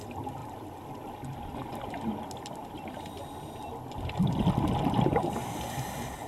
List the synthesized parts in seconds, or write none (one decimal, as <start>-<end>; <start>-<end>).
none